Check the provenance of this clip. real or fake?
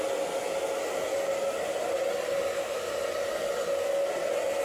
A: real